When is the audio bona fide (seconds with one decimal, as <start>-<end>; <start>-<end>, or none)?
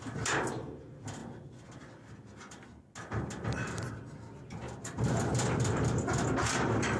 0.0-5.3; 6.0-7.0